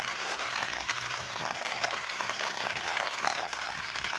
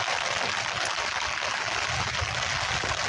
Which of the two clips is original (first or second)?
second